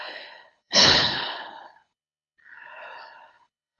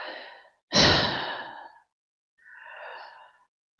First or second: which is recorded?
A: second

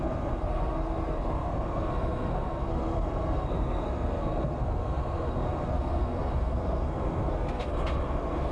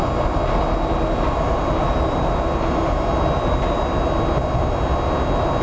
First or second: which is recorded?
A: second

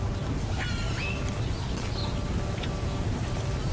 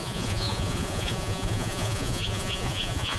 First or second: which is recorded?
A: first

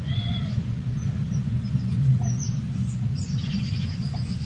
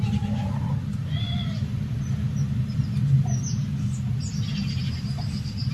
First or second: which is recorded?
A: second